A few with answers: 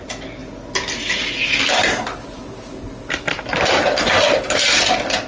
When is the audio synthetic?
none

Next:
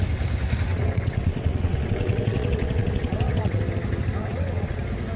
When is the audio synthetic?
0.7-3.6 (vocoder, WaveNeXt); 4.2-4.8

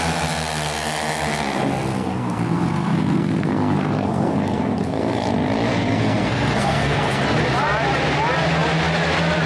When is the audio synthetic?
1.9-5.2 (codec, SNAC); 5.7-7.2

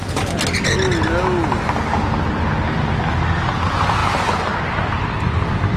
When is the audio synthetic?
none